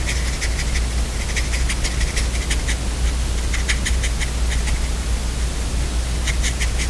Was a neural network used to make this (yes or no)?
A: no